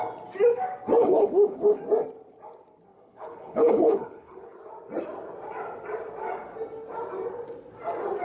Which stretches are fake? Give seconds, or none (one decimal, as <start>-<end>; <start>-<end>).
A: 1.0-1.8; 2.9-4.6